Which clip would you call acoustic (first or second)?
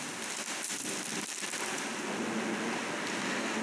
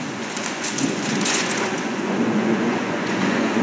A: first